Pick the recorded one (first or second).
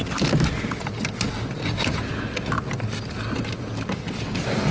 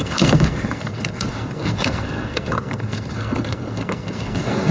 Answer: first